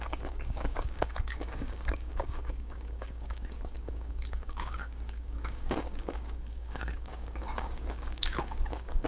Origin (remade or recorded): remade